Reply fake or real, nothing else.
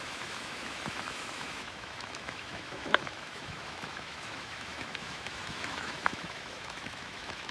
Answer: fake